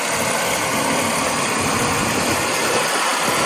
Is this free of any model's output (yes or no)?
yes